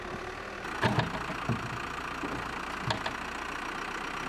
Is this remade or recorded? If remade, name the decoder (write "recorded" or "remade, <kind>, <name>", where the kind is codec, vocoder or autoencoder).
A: recorded